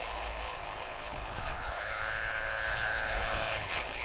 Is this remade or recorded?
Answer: remade